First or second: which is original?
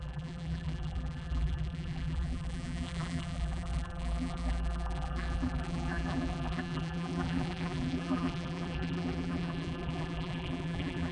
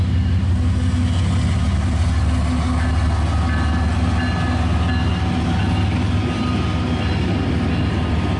second